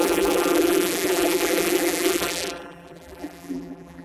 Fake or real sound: fake